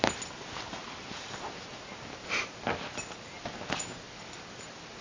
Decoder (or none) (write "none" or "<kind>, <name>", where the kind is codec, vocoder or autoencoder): none